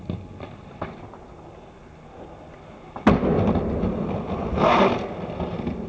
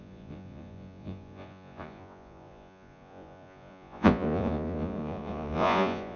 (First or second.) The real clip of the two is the first